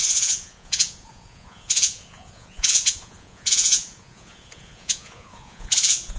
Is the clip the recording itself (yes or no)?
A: no